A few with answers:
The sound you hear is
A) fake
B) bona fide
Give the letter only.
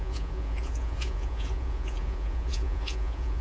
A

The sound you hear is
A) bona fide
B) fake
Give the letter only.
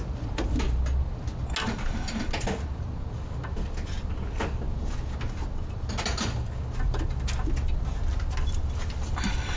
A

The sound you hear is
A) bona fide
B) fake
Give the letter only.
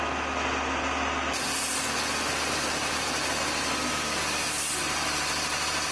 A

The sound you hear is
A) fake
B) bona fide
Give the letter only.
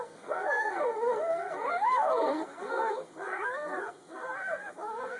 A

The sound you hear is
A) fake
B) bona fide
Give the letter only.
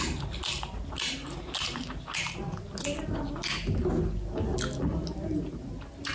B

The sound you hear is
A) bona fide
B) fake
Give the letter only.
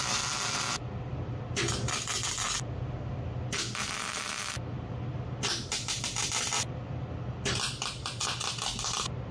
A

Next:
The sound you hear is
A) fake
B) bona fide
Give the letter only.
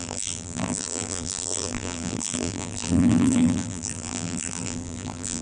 A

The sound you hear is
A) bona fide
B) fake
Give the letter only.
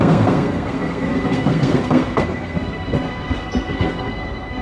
B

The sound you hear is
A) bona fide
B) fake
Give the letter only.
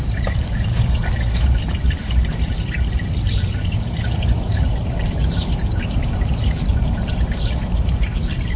B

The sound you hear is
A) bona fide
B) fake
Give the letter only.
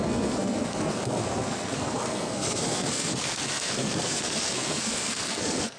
B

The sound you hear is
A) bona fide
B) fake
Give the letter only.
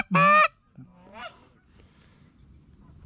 A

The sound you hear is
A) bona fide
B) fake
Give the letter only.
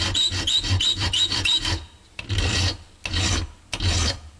A